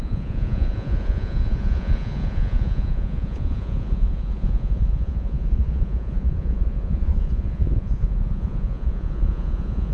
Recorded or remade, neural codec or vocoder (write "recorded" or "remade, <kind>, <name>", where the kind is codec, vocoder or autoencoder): remade, vocoder, Vocos